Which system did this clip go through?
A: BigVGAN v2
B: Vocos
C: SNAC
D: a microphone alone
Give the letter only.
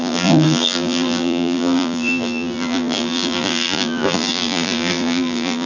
A